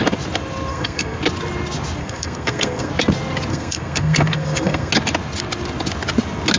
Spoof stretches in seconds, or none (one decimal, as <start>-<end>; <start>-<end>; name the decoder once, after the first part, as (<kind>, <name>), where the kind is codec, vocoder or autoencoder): 0.7-1.2 (codec, SNAC); 2.0-2.9; 3.5-4.9

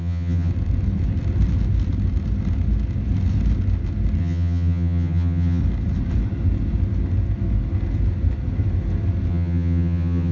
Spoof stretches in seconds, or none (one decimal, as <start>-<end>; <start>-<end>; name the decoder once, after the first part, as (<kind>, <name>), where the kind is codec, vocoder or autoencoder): 0.0-0.5 (vocoder, HiFi-GAN); 4.2-5.6; 9.3-10.3

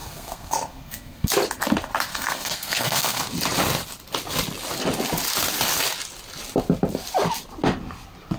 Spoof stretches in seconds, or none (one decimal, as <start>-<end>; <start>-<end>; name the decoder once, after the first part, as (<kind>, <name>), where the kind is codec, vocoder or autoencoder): 0.0-1.3 (codec, SNAC); 2.1-3.2

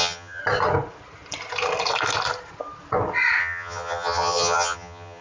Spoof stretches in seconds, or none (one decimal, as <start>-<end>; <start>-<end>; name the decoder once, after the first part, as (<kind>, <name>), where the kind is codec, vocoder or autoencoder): 0.0-0.4 (vocoder, HiFi-GAN); 3.4-5.2